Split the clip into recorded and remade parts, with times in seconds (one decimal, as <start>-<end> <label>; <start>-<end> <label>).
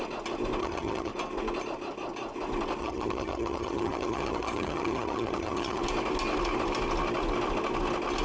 0.0-0.6 recorded; 0.6-1.1 remade; 1.1-2.8 recorded; 2.8-5.8 remade; 5.8-8.2 recorded